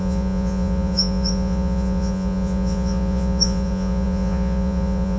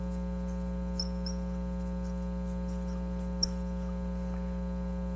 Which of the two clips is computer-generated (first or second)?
first